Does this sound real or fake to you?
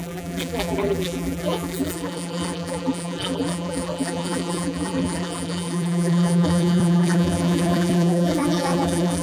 fake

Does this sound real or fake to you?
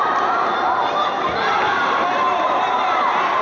real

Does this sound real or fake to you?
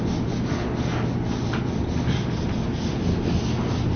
real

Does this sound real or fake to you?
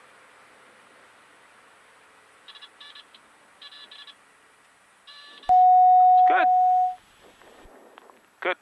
real